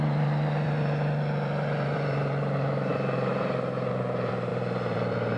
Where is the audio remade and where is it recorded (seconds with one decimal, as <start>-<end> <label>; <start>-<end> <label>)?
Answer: 0.0-5.4 remade